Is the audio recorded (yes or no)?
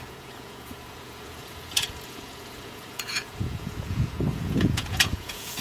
no